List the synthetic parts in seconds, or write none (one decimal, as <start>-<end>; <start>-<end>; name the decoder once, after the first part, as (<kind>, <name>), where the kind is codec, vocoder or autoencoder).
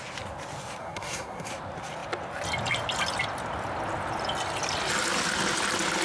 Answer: 0.8-1.5 (codec, SNAC)